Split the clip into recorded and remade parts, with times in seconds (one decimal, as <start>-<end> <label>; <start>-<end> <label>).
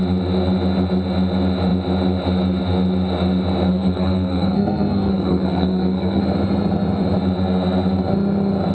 0.0-3.7 recorded; 3.7-6.2 remade; 6.2-8.7 recorded